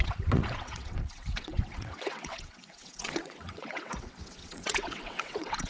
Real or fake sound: fake